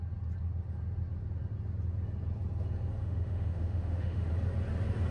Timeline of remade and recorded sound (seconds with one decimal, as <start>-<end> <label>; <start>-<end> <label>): 0.0-3.0 recorded; 3.0-4.3 remade; 4.3-5.1 recorded